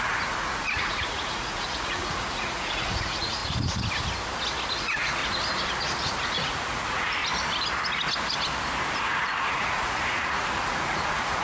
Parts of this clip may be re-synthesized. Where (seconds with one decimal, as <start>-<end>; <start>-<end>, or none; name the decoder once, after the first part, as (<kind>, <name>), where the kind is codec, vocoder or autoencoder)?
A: 0.0-3.4 (vocoder, Vocos); 4.8-5.2; 6.2-7.2; 9.0-11.4